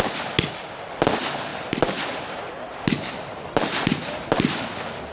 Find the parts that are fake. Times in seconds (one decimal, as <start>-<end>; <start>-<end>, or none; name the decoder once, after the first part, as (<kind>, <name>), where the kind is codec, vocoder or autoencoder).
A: none